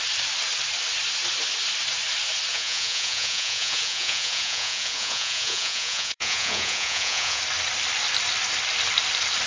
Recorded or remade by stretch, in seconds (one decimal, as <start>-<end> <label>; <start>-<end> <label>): 0.0-2.5 recorded; 2.5-7.4 remade; 7.4-9.5 recorded